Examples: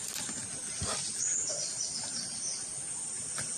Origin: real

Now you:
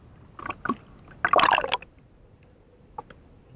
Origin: real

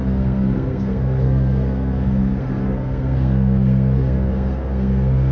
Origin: fake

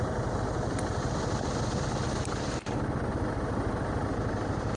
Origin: real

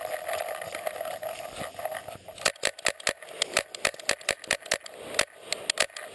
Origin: real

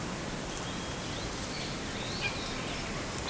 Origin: real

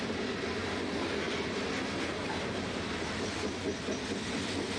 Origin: real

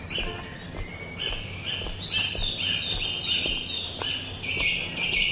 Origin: real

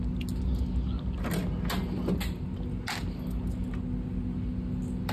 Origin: real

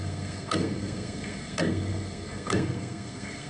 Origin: fake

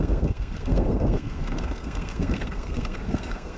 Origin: fake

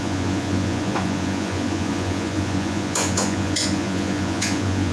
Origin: fake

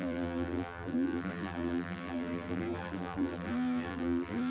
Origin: fake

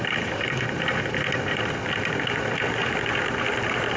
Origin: real